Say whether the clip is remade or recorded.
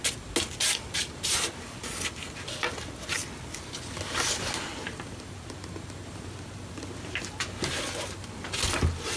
recorded